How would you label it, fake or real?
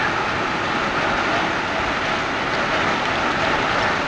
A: real